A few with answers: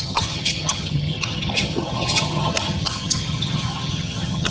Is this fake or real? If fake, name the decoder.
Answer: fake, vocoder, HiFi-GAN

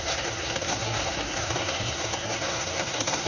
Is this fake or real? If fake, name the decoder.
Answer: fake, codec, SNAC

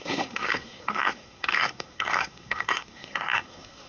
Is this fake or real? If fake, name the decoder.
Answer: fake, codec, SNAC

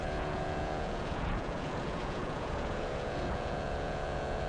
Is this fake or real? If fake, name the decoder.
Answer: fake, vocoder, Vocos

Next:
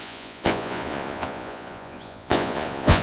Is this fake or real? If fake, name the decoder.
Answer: fake, vocoder, Vocos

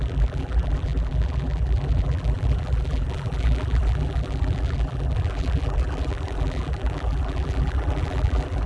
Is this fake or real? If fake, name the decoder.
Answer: fake, vocoder, BigVGAN v2